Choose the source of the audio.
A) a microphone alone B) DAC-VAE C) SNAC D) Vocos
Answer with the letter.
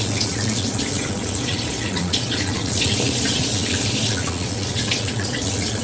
D